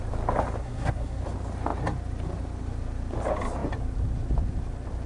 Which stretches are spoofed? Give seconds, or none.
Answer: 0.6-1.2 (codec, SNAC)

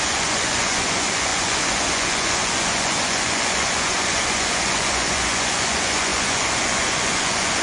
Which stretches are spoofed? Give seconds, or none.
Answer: 0.0-7.6 (vocoder, Vocos)

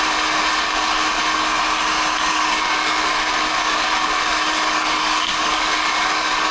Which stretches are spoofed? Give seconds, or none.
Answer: 0.5-1.2 (codec, DAC); 2.3-6.5